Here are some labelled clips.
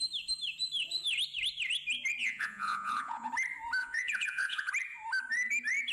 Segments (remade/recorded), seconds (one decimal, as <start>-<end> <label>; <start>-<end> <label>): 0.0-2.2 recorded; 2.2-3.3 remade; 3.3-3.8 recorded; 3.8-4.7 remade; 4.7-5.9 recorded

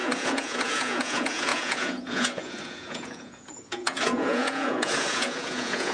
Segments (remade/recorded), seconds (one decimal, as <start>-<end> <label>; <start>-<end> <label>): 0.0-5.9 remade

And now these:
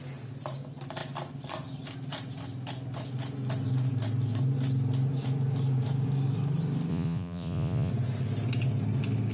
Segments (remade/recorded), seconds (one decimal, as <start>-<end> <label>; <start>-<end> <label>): 0.0-6.9 recorded; 6.9-7.9 remade; 7.9-9.3 recorded

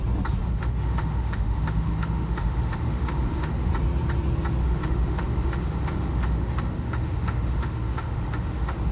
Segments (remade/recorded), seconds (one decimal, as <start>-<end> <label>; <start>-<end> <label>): 0.0-0.4 recorded; 0.4-3.7 remade; 3.7-4.6 recorded; 4.6-8.9 remade